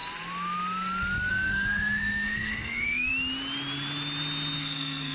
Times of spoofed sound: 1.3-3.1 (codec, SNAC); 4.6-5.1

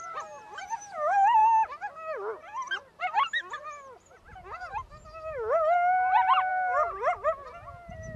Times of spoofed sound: none

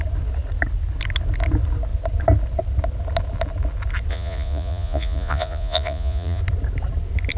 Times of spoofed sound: 4.1-6.4 (vocoder, Vocos)

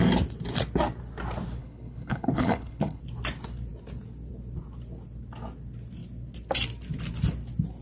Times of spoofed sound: 1.6-3.0 (codec, HILCodec)

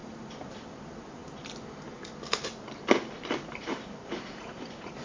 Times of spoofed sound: 0.5-1.2 (vocoder, BigVGAN v2); 3.4-5.0

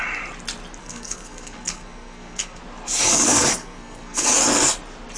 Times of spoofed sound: 0.8-2.6 (codec, SNAC); 3.1-4.3

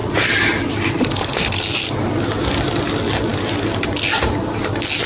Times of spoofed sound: none

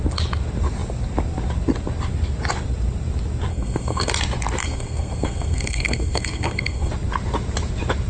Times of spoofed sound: 3.5-4.1 (codec, SNAC); 4.6-6.9